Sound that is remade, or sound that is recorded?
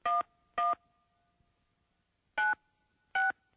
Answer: recorded